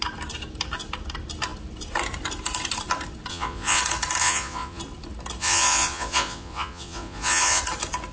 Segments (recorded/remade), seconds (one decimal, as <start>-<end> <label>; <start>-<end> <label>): 0.0-3.3 recorded; 3.3-3.8 remade; 3.8-4.2 recorded; 4.2-4.8 remade; 4.8-5.4 recorded; 5.4-7.6 remade; 7.6-8.1 recorded